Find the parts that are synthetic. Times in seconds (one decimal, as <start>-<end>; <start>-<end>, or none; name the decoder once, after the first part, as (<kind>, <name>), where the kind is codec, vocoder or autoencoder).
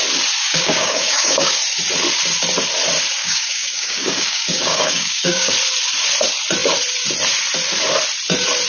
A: 0.4-1.6 (codec, DAC); 3.2-5.5